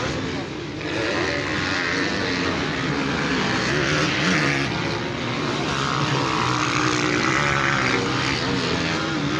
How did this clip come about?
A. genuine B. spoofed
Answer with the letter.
A